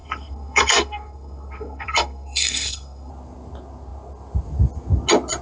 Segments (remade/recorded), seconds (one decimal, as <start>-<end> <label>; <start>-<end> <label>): 0.0-3.1 remade; 3.1-5.4 recorded